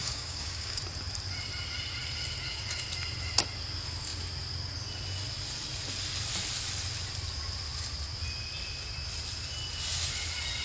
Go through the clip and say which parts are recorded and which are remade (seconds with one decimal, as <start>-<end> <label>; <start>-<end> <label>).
0.0-0.8 remade; 0.8-10.6 recorded